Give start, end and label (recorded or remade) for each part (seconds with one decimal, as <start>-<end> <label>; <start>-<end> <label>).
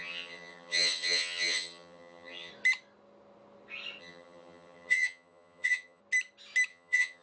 0.0-2.5 remade; 2.5-4.0 recorded; 4.0-6.0 remade; 6.0-6.7 recorded; 6.7-7.2 remade